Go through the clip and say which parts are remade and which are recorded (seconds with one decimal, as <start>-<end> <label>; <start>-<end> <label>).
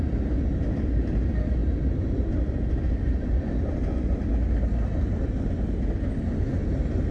0.0-7.1 recorded